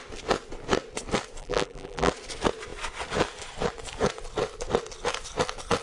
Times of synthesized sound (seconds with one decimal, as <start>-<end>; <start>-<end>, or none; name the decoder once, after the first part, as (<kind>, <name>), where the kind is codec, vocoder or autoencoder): 1.4-2.1 (vocoder, BigVGAN v2)